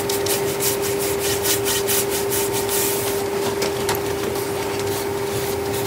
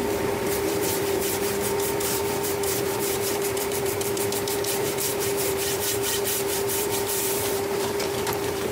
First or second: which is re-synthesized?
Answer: second